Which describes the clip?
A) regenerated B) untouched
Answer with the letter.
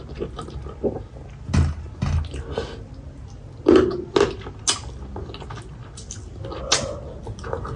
B